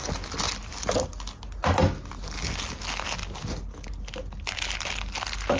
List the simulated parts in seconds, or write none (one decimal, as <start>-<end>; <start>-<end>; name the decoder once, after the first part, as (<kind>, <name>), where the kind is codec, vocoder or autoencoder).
none